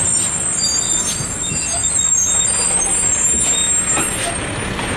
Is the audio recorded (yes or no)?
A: yes